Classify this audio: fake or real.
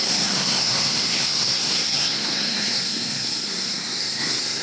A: fake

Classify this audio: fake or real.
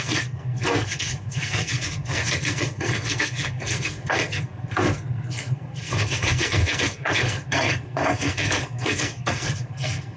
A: fake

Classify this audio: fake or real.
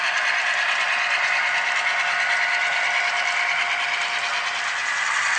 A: real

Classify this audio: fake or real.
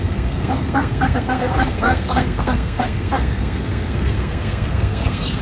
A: fake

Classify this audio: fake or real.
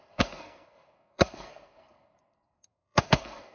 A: fake